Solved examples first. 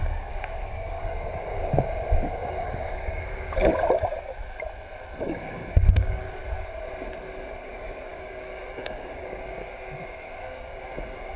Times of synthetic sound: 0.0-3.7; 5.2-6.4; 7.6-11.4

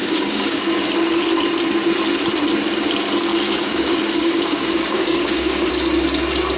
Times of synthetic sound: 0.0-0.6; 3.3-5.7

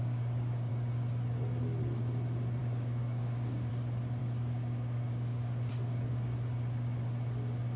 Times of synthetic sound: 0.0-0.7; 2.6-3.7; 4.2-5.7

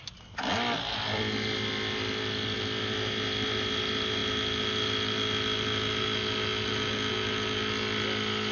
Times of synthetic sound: none

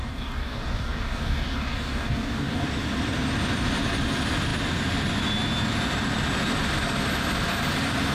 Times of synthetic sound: 0.0-2.7